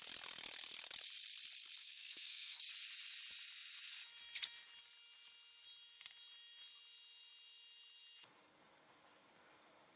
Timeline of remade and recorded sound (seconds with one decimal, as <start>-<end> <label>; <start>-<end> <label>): 0.0-1.8 recorded; 1.8-2.6 remade; 2.6-10.0 recorded